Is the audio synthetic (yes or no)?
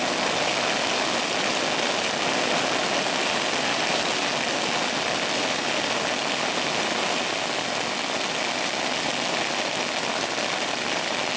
no